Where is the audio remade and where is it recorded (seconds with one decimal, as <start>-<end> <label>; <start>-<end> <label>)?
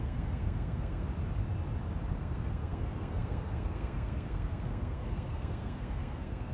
0.0-1.1 remade; 1.1-2.2 recorded; 2.2-6.5 remade